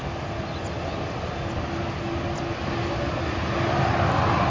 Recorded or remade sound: recorded